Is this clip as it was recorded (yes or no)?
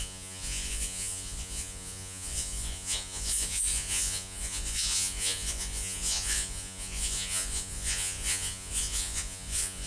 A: no